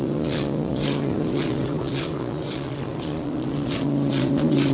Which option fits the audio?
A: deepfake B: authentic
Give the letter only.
A